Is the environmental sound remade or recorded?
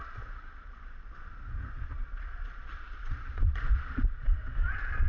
remade